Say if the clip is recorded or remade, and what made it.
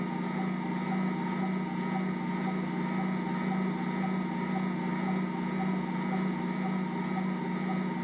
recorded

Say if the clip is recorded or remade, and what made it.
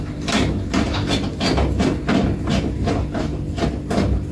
recorded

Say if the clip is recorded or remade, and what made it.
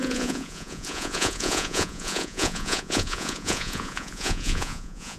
remade, vocoder, Vocos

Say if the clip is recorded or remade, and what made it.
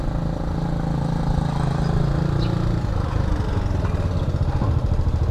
recorded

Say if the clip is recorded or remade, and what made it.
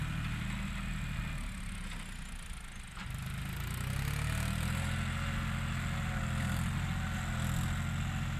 recorded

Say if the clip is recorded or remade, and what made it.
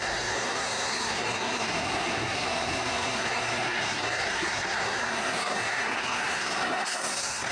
remade, codec, SNAC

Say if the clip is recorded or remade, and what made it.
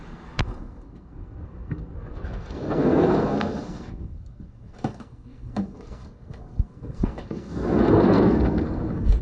remade, codec, SNAC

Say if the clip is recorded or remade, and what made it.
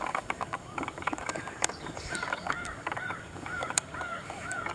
remade, codec, DAC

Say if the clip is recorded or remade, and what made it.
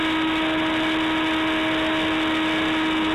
recorded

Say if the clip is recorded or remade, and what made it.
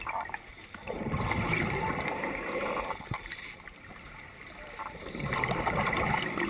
recorded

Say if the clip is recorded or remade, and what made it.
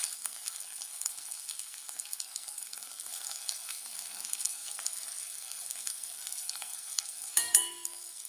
remade, codec, SNAC